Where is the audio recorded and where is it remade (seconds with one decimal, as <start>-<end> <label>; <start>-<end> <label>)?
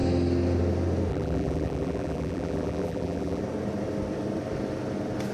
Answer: 0.0-1.1 recorded; 1.1-3.4 remade; 3.4-5.3 recorded